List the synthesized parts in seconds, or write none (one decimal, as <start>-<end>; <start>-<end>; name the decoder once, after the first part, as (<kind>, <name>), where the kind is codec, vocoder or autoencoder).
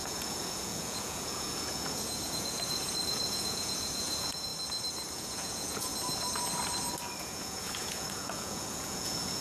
0.0-4.5 (vocoder, Vocos); 5.1-5.9; 7.2-9.4